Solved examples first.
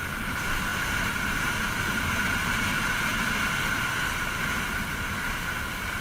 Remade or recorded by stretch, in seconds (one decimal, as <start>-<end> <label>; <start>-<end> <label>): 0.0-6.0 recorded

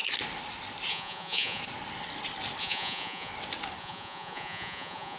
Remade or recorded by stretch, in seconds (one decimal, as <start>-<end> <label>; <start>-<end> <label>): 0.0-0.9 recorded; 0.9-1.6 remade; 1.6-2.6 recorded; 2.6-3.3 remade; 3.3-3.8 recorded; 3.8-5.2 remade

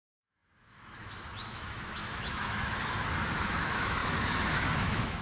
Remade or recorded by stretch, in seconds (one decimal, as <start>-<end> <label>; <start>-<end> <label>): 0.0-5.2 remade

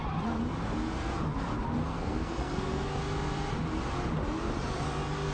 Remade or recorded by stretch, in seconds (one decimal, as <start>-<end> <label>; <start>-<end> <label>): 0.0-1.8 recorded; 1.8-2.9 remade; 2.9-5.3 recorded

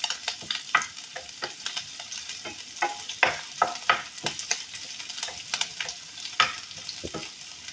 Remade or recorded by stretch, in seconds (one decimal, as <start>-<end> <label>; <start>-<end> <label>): 0.0-7.7 recorded